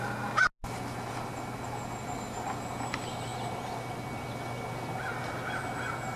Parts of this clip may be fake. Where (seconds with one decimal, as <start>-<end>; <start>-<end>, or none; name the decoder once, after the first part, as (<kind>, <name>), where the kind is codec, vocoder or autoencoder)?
none